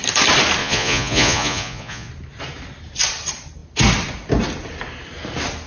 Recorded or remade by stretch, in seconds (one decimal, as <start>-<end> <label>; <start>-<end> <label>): 0.0-0.6 recorded; 0.6-2.1 remade; 2.1-5.7 recorded